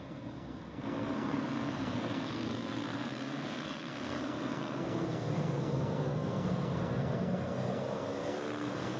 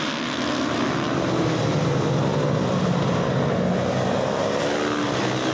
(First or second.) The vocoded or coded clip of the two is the first